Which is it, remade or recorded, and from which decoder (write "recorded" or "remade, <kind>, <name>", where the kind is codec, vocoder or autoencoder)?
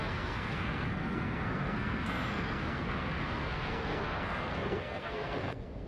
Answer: remade, codec, SNAC